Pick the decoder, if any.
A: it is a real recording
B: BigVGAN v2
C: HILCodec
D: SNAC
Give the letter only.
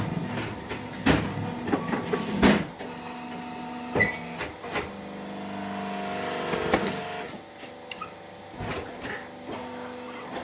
A